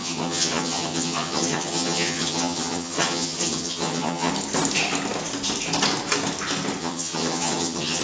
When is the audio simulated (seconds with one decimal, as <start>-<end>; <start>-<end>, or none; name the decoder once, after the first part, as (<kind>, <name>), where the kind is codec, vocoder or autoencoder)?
0.0-4.3 (vocoder, HiFi-GAN); 6.8-8.0